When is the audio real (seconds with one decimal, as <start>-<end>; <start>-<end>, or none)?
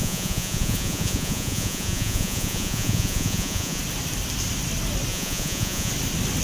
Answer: 3.8-5.1; 5.9-6.4